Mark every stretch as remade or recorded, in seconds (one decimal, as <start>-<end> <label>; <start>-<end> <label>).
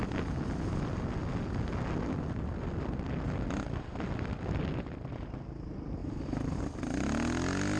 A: 0.0-6.0 recorded; 6.0-6.5 remade; 6.5-7.8 recorded